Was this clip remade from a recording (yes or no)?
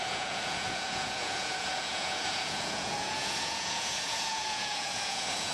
yes